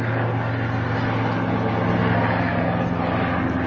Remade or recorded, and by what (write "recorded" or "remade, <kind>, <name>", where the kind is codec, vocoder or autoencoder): recorded